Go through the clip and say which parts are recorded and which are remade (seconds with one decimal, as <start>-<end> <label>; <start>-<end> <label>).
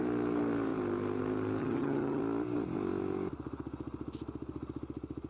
0.0-1.6 recorded; 1.6-2.2 remade; 2.2-5.3 recorded